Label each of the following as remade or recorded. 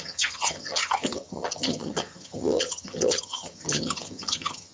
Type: remade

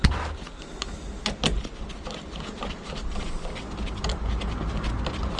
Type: recorded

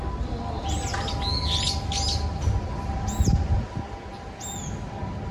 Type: recorded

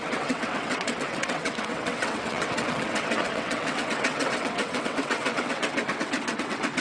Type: remade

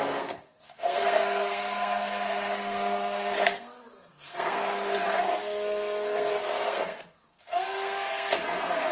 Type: remade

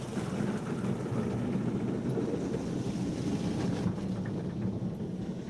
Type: recorded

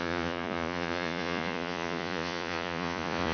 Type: remade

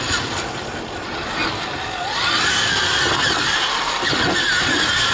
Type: recorded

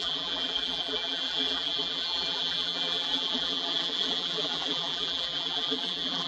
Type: remade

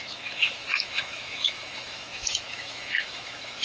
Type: remade